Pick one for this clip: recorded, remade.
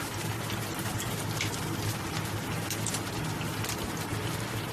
recorded